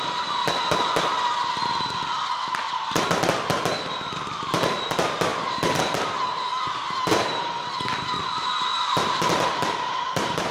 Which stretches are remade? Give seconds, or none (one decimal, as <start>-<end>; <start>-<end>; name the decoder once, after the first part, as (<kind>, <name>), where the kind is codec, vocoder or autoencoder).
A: 5.3-7.7 (vocoder, BigVGAN v2); 8.7-10.5